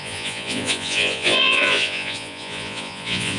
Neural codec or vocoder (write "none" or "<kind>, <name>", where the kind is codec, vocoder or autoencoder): vocoder, Vocos